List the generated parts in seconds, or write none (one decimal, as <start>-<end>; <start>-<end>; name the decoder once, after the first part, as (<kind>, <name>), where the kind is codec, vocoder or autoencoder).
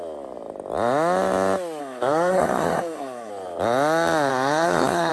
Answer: 1.8-3.3 (codec, SNAC); 4.3-5.1